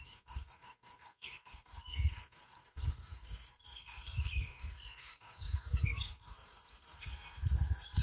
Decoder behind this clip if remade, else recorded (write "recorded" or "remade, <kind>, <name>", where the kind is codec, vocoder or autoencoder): remade, codec, SNAC